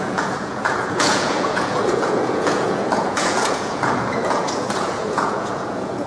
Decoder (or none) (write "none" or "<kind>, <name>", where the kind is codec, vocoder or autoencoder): vocoder, Vocos